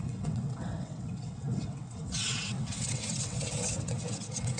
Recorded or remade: remade